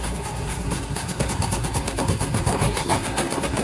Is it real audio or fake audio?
fake